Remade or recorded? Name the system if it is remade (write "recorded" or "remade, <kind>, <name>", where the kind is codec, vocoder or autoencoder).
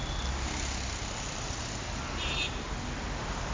recorded